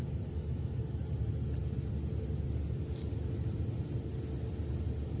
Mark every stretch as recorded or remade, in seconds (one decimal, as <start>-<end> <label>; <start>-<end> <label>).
0.0-5.2 recorded